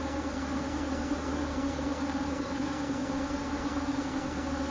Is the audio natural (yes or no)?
no